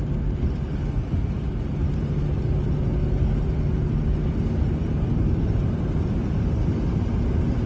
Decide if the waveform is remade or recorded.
recorded